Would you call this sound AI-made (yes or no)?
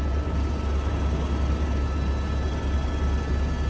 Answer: no